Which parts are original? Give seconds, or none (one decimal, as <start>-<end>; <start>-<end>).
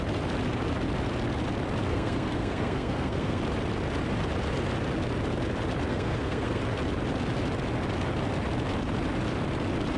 0.0-1.9; 3.4-5.9; 6.6-10.0